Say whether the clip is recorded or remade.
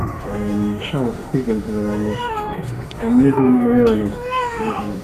remade